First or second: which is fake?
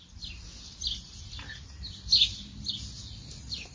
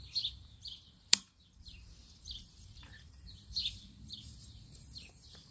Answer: second